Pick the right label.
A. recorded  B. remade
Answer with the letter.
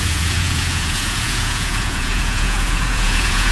B